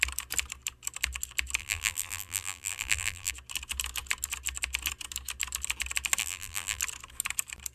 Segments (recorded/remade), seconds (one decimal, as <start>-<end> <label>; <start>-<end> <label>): 0.0-1.6 recorded; 1.6-3.3 remade; 3.3-6.2 recorded; 6.2-6.8 remade; 6.8-7.7 recorded